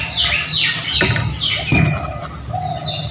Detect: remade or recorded recorded